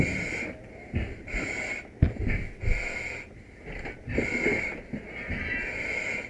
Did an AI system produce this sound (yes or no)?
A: no